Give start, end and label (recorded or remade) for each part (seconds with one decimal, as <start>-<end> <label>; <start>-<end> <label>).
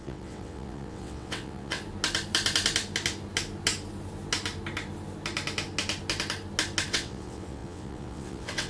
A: 0.0-1.8 remade; 1.8-6.9 recorded; 6.9-8.7 remade